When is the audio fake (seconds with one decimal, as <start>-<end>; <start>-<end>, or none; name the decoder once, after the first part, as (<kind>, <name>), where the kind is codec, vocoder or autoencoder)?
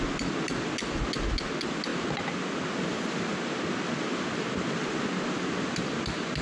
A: none